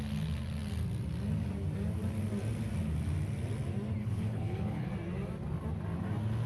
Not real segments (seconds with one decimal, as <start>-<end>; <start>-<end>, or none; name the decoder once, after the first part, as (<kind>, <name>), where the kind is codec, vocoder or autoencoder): 4.0-4.9 (codec, HILCodec)